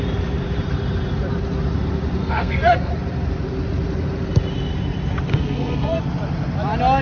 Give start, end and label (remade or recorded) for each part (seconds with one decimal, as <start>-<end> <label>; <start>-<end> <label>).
0.0-2.2 recorded; 2.2-2.9 remade; 2.9-5.3 recorded; 5.3-6.0 remade; 6.0-7.0 recorded